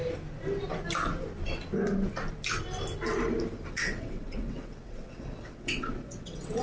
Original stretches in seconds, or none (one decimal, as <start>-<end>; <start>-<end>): 0.0-3.7